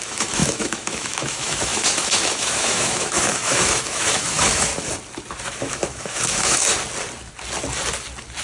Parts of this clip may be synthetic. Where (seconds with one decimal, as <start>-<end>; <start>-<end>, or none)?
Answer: 0.0-4.7; 5.4-6.7